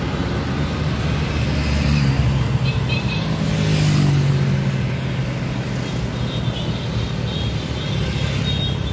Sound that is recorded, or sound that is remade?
recorded